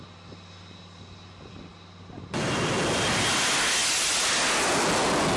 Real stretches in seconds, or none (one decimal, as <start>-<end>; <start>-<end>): 0.0-5.4